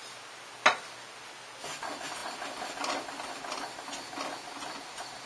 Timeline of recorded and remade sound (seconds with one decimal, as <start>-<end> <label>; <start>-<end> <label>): 0.0-5.3 recorded